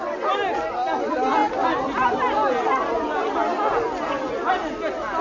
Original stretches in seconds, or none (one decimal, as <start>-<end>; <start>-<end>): 0.0-5.2